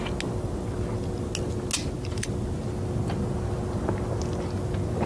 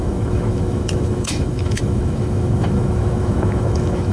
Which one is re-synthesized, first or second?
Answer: second